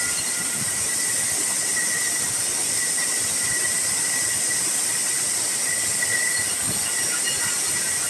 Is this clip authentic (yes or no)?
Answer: yes